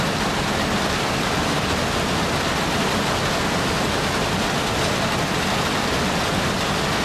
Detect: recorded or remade recorded